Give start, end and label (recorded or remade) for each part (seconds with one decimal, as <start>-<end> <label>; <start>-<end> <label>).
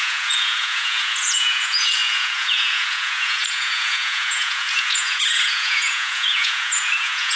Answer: 0.0-7.4 remade